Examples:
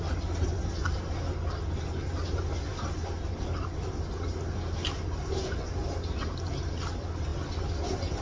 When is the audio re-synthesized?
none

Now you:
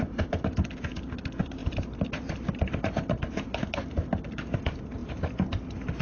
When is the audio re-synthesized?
none

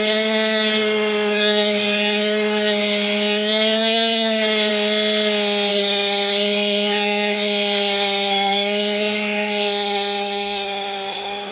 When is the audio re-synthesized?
0.0-4.7 (codec, SNAC); 5.7-11.5

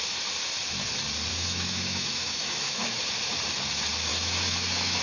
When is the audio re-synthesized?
1.3-3.0 (autoencoder, DAC-VAE); 4.1-5.0

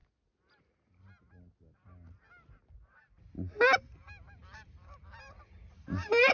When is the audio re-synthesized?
3.8-6.3 (vocoder, BigVGAN v2)

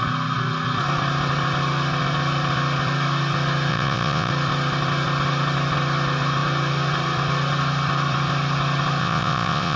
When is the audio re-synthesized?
3.7-4.3 (vocoder, Vocos); 9.0-9.8

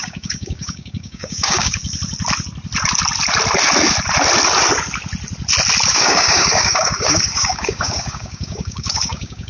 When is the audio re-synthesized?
0.0-1.8 (codec, DAC); 5.9-9.5

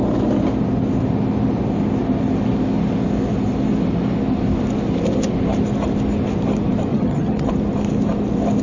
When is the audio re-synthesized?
6.9-7.5 (vocoder, HiFi-GAN)